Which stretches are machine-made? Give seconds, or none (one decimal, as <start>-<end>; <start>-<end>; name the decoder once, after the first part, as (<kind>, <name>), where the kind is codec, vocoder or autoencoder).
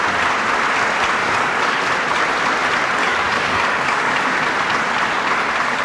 1.2-1.8 (codec, DAC); 3.0-4.2